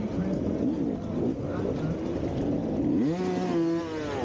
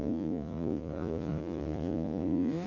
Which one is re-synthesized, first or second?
second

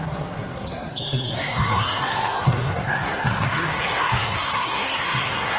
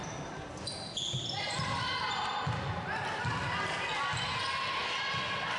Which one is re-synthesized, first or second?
first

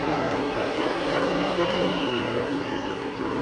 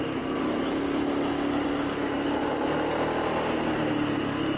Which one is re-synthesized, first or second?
first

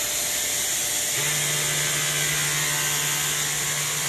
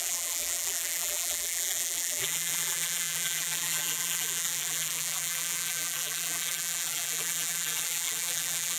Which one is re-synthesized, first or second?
second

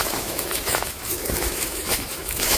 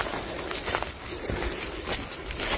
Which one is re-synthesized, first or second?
first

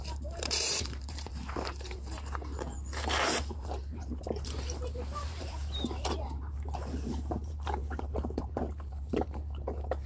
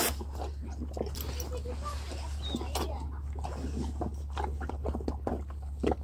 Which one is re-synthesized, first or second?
first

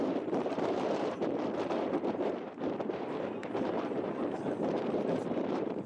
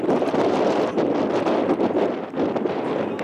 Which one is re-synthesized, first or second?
first